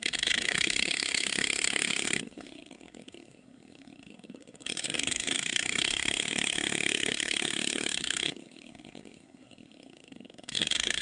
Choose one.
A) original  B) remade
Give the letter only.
B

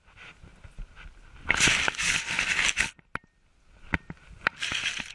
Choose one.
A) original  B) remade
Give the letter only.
A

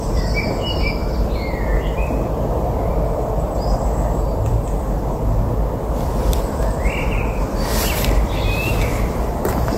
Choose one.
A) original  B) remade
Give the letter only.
B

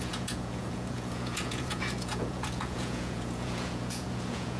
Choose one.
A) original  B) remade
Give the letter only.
B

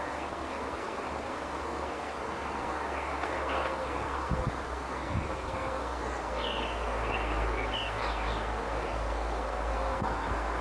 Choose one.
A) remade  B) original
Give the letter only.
A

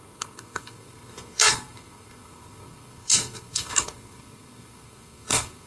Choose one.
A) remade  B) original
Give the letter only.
A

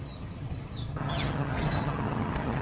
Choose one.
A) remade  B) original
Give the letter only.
A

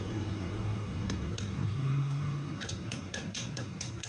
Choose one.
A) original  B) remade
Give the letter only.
B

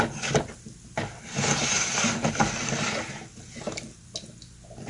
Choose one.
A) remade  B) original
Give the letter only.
B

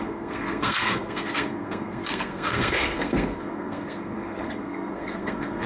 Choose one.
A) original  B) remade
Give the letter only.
B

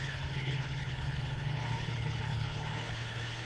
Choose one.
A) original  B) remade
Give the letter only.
B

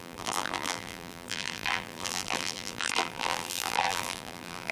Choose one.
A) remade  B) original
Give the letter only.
A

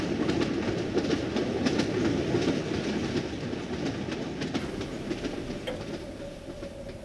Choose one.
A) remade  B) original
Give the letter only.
B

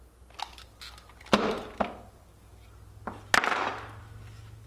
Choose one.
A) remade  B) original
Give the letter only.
B